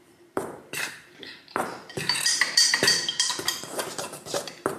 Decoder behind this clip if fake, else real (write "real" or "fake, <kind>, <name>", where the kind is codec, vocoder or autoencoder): fake, vocoder, BigVGAN v2